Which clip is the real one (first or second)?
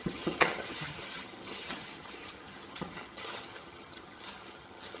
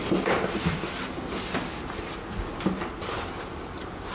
second